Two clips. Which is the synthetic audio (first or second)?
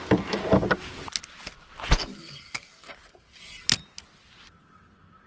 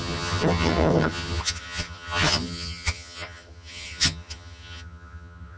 second